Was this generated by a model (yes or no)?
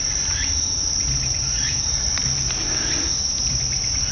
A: no